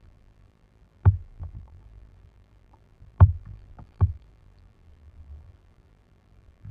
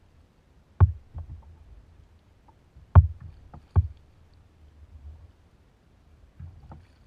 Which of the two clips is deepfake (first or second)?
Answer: first